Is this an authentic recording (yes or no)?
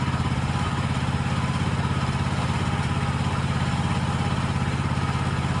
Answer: yes